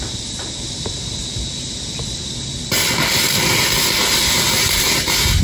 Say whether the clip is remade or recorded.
recorded